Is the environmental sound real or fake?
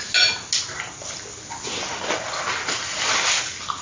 real